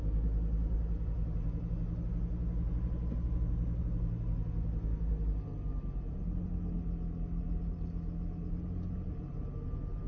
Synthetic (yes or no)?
no